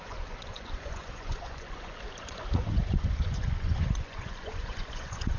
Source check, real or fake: fake